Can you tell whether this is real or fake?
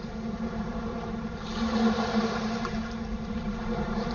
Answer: fake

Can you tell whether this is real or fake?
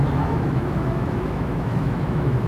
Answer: fake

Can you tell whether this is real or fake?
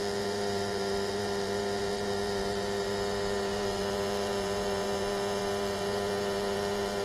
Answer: fake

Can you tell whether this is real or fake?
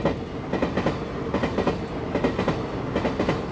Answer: real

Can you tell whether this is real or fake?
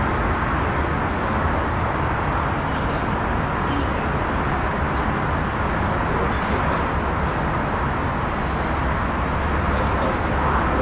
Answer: real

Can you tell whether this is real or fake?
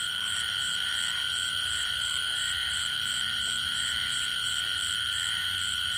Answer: fake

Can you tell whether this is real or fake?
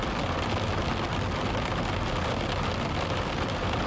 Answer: real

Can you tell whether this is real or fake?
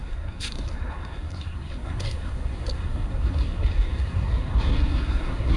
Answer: fake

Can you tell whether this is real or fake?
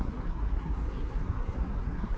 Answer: fake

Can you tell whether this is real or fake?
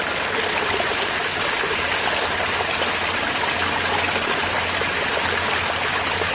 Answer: real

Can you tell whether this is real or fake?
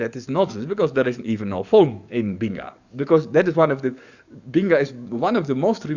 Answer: fake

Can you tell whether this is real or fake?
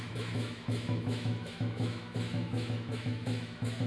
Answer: fake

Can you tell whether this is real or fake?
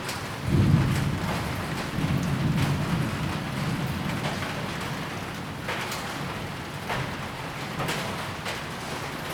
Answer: real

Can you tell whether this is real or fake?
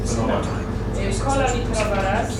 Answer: real